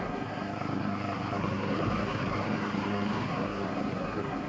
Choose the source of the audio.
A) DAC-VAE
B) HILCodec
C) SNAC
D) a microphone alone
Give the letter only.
C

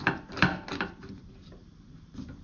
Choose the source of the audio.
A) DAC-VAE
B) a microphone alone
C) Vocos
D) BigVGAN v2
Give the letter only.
B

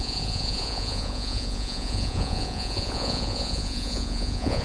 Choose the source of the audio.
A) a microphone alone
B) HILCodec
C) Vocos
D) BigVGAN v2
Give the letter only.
C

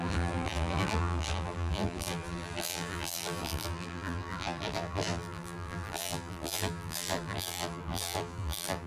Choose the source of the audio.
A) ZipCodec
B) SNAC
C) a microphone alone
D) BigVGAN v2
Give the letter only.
D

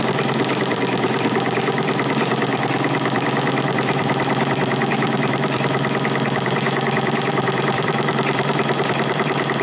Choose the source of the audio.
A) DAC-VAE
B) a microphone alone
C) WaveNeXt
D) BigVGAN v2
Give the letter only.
D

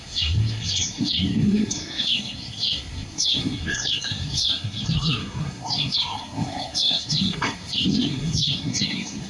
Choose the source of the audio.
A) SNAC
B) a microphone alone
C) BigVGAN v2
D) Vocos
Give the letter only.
A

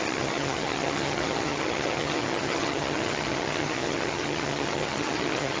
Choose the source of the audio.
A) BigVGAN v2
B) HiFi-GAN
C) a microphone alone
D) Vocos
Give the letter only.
B